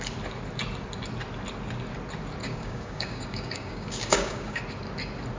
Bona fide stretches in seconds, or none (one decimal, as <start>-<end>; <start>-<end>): 0.0-2.4; 4.6-5.4

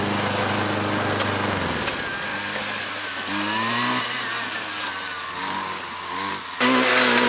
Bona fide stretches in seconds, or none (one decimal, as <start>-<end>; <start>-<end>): 0.0-5.4; 6.3-7.3

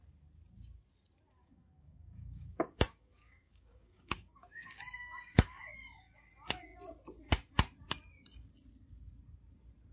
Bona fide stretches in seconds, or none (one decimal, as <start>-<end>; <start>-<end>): 0.0-1.4; 6.3-9.9

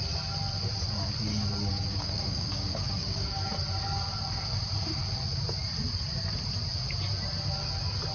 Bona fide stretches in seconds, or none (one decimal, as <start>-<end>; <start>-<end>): 0.0-1.7; 3.5-8.1

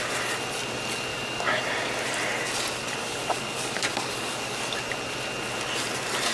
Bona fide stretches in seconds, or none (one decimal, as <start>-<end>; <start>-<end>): 0.0-1.1; 1.6-3.0; 4.6-6.3

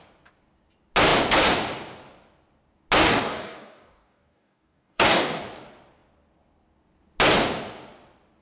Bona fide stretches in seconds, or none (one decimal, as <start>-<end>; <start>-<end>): 0.0-3.0; 5.4-8.4

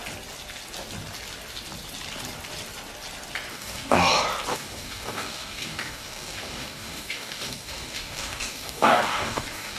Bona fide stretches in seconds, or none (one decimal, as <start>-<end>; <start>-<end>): 0.0-3.5; 4.1-4.5

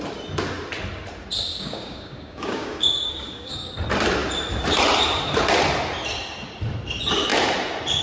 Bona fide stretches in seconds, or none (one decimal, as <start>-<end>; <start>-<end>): 0.0-1.5; 3.7-8.0